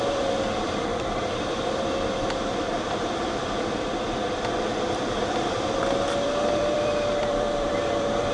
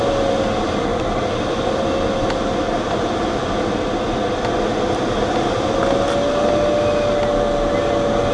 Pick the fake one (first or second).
first